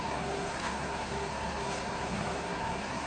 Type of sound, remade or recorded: remade